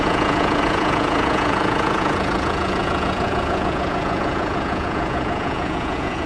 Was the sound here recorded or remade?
remade